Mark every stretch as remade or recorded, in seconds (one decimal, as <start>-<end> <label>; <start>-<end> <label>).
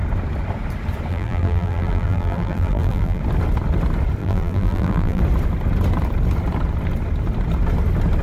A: 0.0-1.1 recorded; 1.1-3.2 remade; 3.2-4.2 recorded; 4.2-5.2 remade; 5.2-8.2 recorded